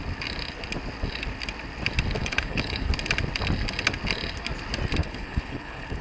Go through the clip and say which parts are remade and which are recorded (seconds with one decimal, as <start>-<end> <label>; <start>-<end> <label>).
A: 0.0-2.2 recorded; 2.2-2.9 remade; 2.9-5.0 recorded; 5.0-6.0 remade